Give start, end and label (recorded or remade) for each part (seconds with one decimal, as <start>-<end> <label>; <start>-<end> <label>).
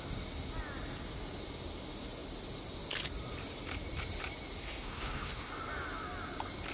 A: 0.0-4.6 recorded; 4.6-5.5 remade; 5.5-6.7 recorded